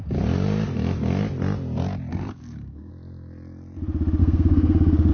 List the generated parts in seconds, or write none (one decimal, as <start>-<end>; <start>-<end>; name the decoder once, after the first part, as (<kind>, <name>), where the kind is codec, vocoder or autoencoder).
2.1-2.9 (codec, SNAC); 4.2-5.1